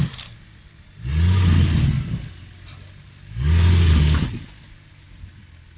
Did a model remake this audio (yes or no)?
no